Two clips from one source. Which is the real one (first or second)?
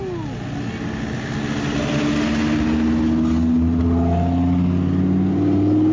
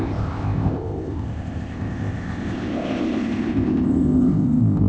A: first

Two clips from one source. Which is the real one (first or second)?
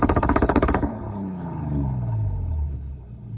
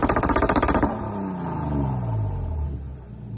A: second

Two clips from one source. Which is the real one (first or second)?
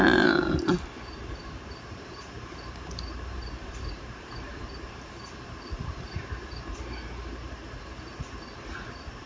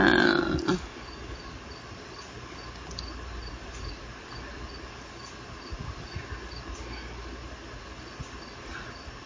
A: second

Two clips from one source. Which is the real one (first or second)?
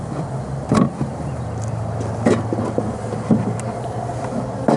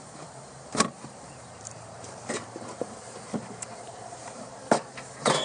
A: first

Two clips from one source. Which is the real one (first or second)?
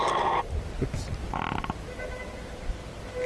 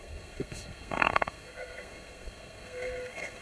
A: first